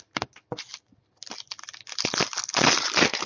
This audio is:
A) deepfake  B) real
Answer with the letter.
B